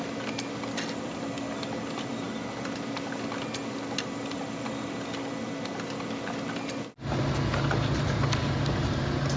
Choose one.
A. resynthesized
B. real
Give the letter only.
B